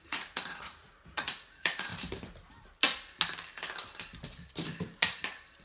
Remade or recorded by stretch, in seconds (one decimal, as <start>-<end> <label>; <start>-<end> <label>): 0.0-1.9 remade; 1.9-5.6 recorded

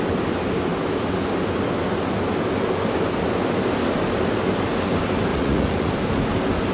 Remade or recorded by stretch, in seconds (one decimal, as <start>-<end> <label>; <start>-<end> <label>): 0.0-5.3 recorded; 5.3-5.9 remade; 5.9-6.7 recorded